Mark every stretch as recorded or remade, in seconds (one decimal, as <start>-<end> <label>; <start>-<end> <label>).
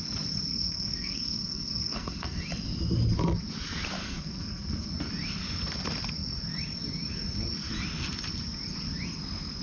0.0-0.5 recorded; 0.5-2.4 remade; 2.4-4.0 recorded; 4.0-4.9 remade; 4.9-9.6 recorded